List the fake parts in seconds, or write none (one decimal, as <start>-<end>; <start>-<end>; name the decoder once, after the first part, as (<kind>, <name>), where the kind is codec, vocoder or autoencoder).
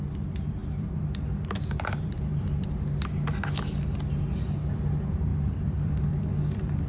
0.6-2.4 (vocoder, BigVGAN v2); 5.3-6.1